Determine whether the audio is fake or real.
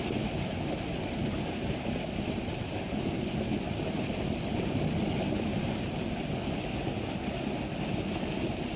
real